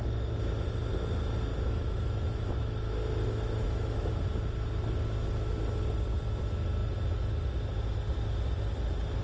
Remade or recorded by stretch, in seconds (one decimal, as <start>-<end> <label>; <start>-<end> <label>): 0.0-1.5 recorded; 1.5-2.9 remade; 2.9-3.6 recorded; 3.6-4.1 remade; 4.1-9.2 recorded